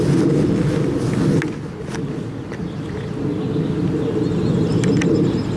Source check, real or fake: real